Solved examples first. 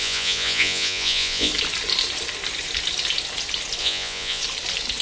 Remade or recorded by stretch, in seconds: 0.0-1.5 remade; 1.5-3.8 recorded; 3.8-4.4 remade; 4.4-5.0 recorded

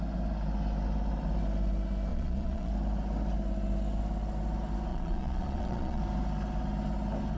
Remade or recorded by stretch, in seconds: 0.0-2.1 recorded; 2.1-2.7 remade; 2.7-4.9 recorded; 4.9-6.0 remade; 6.0-7.4 recorded

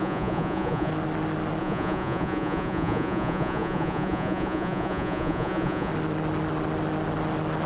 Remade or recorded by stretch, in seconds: 0.0-0.9 remade; 0.9-1.6 recorded; 1.6-5.9 remade; 5.9-7.7 recorded